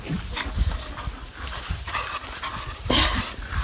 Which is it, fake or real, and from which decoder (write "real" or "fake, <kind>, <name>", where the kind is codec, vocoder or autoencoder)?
real